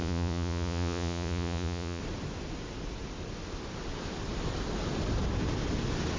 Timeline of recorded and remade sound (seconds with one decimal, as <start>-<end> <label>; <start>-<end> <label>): 0.0-2.0 remade; 2.0-6.2 recorded